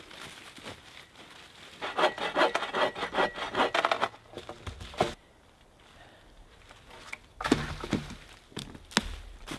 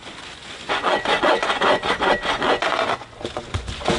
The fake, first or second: second